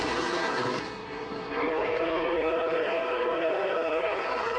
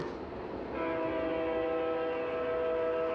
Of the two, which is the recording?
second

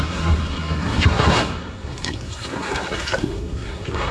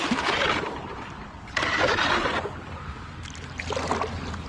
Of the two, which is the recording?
second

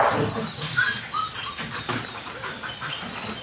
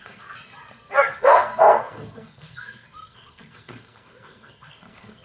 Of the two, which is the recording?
first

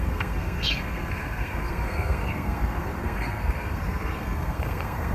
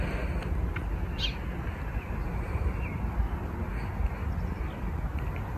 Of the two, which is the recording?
second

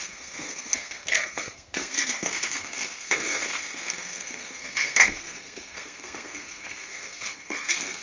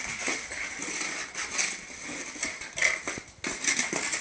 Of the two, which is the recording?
second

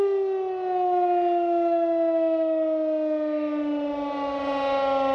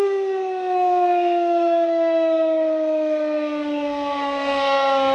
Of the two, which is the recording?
first